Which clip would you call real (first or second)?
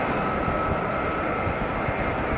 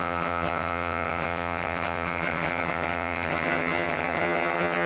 first